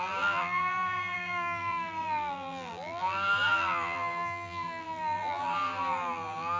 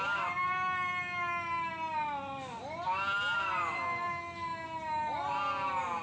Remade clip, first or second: first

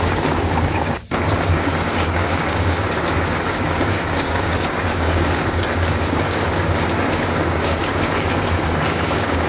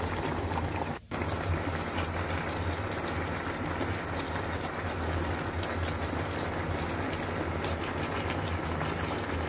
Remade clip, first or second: first